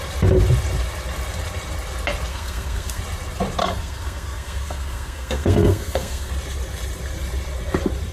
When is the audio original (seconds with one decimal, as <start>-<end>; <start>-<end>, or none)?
0.0-2.3; 3.0-3.6; 6.3-8.1